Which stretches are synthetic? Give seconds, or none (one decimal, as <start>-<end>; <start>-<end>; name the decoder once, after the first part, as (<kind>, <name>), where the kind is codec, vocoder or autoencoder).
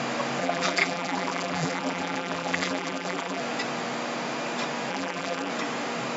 0.4-3.4 (vocoder, BigVGAN v2); 4.9-5.5